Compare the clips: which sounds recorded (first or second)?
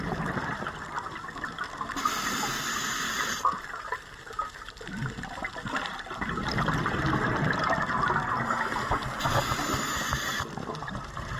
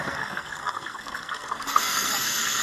first